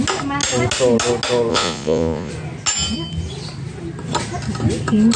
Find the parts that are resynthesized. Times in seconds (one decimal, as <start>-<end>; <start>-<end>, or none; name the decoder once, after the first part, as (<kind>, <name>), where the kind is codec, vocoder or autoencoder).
1.5-2.3 (vocoder, Vocos)